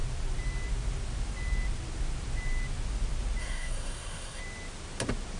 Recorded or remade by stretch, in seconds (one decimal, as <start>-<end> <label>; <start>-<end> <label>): 0.0-3.4 recorded; 3.4-4.4 remade; 4.4-5.4 recorded